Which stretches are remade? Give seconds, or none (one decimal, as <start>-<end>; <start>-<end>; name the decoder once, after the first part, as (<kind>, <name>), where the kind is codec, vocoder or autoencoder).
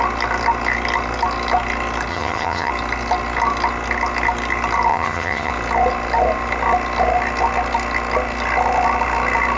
2.1-2.7 (vocoder, HiFi-GAN); 4.9-5.5